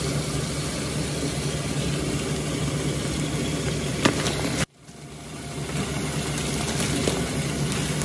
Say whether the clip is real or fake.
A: real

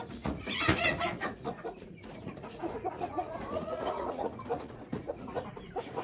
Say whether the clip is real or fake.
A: fake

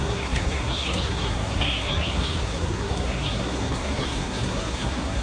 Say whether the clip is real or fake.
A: fake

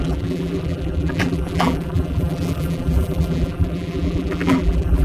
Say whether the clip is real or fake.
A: fake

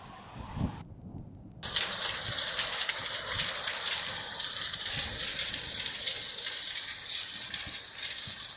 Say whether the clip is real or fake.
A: fake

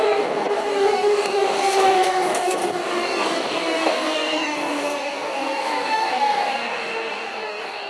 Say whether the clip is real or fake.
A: fake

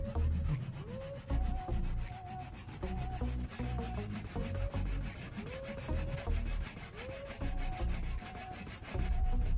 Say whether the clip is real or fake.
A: real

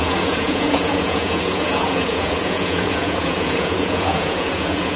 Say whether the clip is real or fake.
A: fake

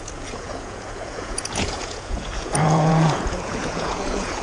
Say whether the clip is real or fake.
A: fake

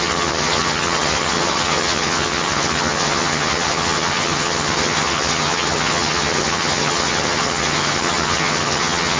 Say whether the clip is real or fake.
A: fake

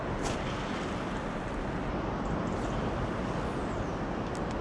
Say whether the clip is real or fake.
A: real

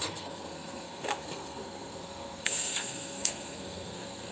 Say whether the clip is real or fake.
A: fake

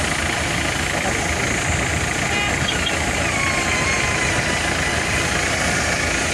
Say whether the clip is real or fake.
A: real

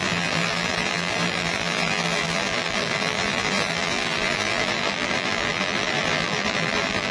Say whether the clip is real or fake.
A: fake